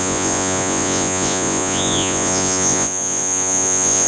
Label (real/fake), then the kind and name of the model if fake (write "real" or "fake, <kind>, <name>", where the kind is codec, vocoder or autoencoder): fake, vocoder, Vocos